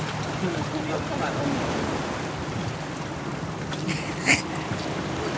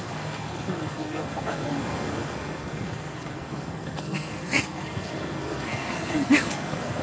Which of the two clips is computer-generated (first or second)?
second